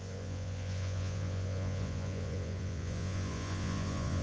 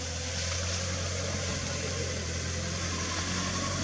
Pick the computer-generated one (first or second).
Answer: first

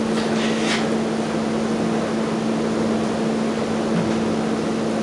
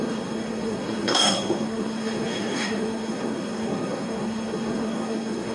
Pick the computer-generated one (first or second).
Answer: second